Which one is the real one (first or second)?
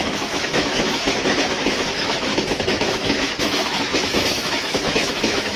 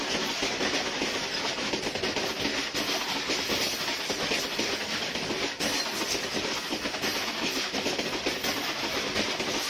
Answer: second